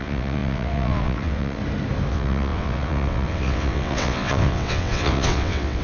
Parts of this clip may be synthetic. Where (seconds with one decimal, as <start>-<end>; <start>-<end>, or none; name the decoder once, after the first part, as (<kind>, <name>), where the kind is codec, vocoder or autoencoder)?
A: 0.0-1.6 (vocoder, WaveNeXt); 2.1-5.8